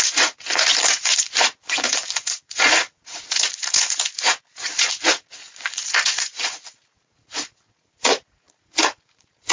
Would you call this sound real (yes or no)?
no